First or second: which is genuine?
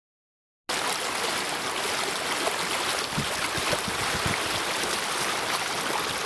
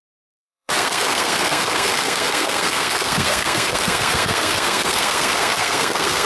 first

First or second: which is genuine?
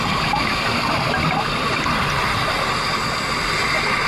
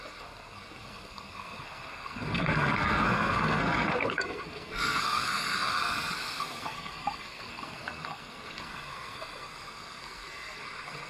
first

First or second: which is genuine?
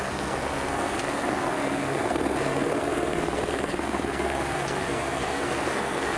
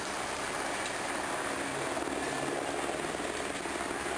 second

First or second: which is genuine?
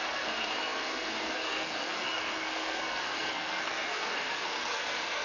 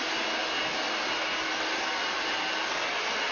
second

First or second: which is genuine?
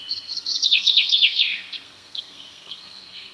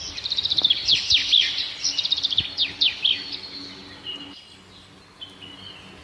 second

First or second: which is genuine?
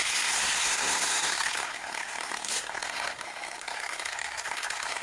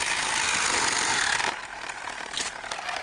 second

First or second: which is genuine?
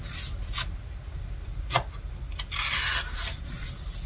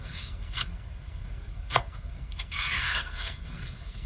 first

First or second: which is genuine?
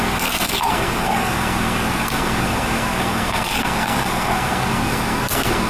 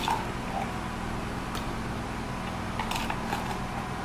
second